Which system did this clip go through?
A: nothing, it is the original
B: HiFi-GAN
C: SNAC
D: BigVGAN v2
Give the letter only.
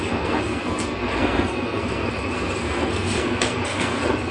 C